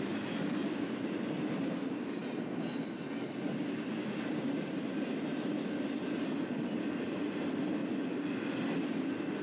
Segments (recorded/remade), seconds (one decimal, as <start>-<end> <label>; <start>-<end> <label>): 0.0-9.4 recorded